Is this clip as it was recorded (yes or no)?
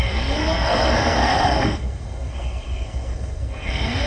no